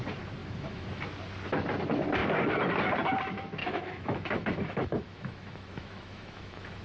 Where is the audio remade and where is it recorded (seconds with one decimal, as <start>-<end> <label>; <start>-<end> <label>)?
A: 0.0-0.4 recorded; 0.4-1.0 remade; 1.0-3.6 recorded; 3.6-6.8 remade